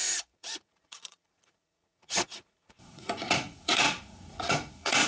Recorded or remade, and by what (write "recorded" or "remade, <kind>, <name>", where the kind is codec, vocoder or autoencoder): remade, vocoder, Vocos